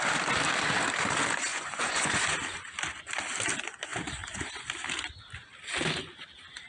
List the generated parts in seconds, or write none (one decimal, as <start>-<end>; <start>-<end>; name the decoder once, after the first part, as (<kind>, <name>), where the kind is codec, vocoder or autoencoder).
1.5-2.4 (vocoder, Vocos)